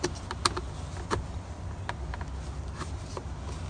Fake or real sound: real